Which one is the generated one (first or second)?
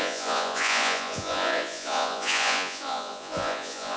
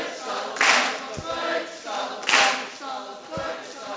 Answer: first